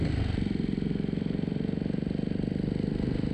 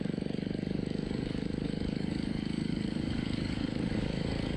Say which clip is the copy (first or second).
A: second